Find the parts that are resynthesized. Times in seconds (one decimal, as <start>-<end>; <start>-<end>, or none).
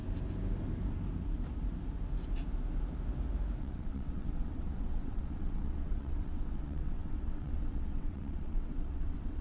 3.6-9.4